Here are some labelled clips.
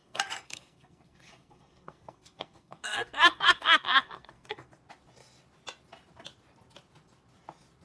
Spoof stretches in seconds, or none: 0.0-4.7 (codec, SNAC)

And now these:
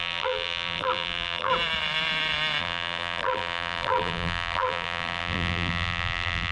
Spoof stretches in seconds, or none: 0.0-1.5 (vocoder, BigVGAN v2); 2.6-6.5